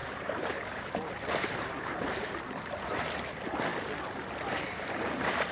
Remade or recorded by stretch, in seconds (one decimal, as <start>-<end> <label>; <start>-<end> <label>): 0.0-3.3 remade; 3.3-5.5 recorded